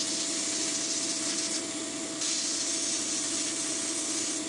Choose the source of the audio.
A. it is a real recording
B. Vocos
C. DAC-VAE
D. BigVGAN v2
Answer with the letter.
A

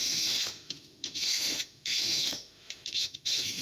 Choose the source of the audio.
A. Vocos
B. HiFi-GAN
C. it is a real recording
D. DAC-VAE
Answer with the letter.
D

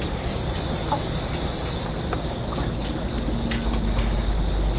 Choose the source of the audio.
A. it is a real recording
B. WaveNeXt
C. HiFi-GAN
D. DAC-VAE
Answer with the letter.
A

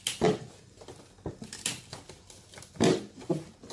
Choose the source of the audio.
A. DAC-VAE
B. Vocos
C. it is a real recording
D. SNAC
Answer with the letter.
C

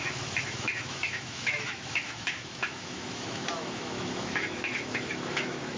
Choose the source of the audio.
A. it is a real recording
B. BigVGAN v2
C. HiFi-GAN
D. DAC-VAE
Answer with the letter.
D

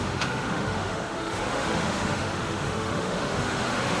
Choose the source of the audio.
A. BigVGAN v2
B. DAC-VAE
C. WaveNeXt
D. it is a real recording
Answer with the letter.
B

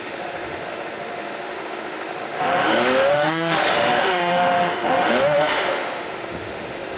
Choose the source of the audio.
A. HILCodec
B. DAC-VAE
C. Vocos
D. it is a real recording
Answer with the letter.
B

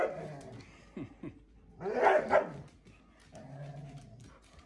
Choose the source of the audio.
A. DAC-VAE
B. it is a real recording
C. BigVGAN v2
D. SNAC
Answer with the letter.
B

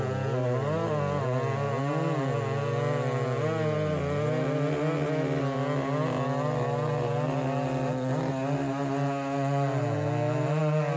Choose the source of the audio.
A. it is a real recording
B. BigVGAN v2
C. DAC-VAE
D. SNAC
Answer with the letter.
A